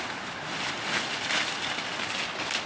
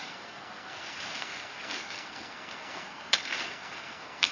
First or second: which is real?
first